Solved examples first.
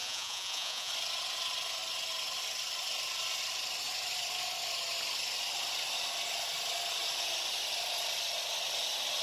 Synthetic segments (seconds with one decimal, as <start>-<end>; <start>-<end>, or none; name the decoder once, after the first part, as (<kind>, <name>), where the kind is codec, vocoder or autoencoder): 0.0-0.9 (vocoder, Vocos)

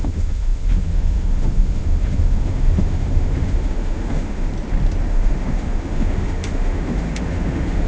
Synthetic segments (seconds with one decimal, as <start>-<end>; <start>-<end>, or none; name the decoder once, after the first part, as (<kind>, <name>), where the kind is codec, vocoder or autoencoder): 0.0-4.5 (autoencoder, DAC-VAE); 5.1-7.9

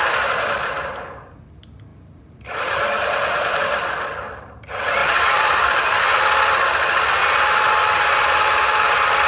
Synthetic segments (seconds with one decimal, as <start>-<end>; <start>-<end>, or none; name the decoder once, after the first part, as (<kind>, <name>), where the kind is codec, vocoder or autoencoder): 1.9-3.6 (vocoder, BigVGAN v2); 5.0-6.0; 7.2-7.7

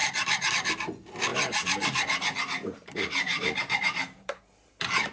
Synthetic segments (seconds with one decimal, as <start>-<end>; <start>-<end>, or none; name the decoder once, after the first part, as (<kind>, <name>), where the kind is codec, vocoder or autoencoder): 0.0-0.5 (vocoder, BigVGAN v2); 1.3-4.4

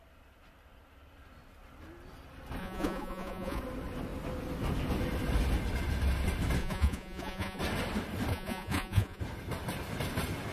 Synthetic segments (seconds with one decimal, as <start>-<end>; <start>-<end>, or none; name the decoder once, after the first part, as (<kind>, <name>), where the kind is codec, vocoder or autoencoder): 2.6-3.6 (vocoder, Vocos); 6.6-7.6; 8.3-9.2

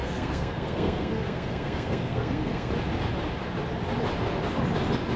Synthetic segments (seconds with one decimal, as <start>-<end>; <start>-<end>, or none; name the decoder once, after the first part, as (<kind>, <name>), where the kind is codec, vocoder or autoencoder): 0.0-2.7 (codec, SNAC)

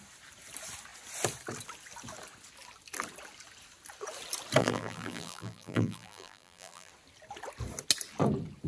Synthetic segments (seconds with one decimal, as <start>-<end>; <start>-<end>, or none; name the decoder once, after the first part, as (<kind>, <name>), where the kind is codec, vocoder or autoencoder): 4.6-6.9 (vocoder, BigVGAN v2)

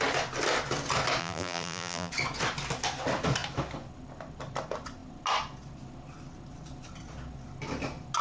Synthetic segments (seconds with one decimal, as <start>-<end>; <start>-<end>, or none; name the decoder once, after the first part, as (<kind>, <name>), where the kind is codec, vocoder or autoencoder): 1.2-2.1 (vocoder, BigVGAN v2)